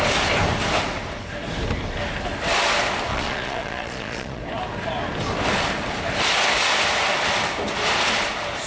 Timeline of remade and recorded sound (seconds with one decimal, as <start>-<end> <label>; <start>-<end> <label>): 0.0-3.1 recorded; 3.1-4.4 remade; 4.4-8.7 recorded